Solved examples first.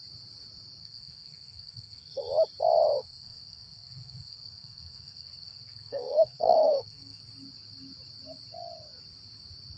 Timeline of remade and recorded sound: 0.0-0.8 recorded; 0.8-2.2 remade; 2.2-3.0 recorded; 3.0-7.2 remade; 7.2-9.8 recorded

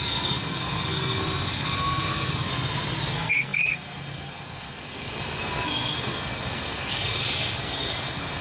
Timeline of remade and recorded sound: 0.0-2.5 remade; 2.5-3.1 recorded; 3.1-8.4 remade

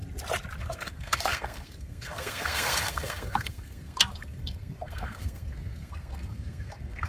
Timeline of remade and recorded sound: 0.0-0.6 recorded; 0.6-7.1 remade

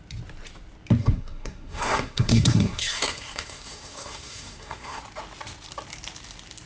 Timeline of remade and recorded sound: 0.0-1.0 recorded; 1.0-5.0 remade; 5.0-6.7 recorded

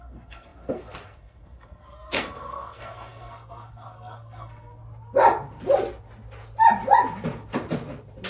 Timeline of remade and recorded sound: 0.0-4.8 remade; 4.8-8.3 recorded

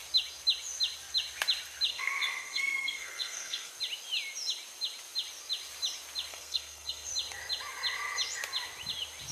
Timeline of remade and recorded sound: 0.0-1.9 recorded; 1.9-3.7 remade; 3.7-6.3 recorded; 6.3-7.1 remade; 7.1-9.3 recorded

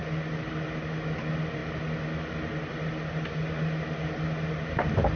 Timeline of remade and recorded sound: 0.0-5.2 recorded